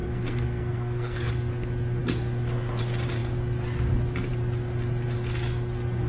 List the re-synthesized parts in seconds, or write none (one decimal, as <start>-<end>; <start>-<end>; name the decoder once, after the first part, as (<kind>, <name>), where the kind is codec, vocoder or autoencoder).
0.0-1.3 (codec, SNAC)